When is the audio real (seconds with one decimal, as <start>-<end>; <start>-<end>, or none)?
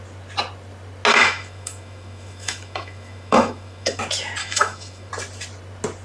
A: 0.0-1.1; 4.0-4.4; 5.1-6.0